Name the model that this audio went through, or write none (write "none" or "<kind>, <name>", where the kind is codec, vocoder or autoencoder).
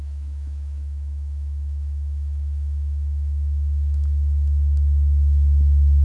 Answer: autoencoder, DAC-VAE